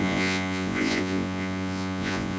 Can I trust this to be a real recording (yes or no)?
no